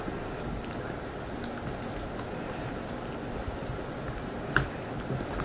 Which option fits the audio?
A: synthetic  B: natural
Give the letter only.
B